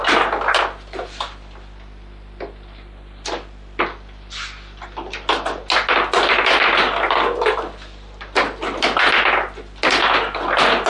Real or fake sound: real